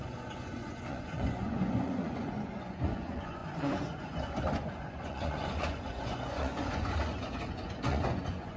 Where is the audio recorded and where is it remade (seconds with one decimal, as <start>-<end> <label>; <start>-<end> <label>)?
0.0-8.6 remade